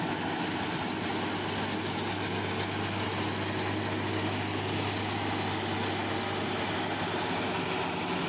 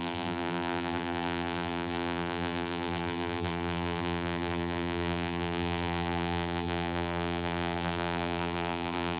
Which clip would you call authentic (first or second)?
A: first